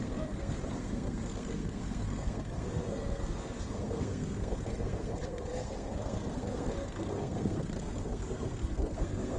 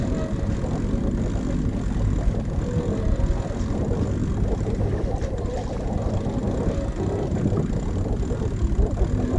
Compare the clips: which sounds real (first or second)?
second